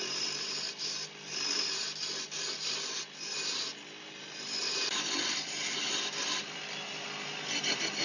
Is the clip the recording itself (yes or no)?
yes